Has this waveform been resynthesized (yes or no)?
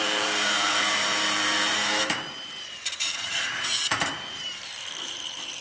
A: yes